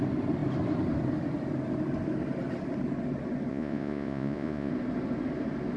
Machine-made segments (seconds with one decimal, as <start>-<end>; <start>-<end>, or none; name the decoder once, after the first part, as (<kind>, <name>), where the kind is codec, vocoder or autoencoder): 3.5-4.7 (vocoder, Vocos)